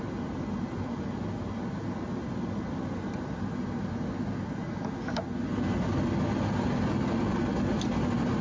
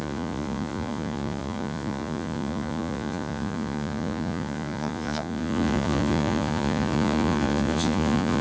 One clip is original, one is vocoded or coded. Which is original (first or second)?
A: first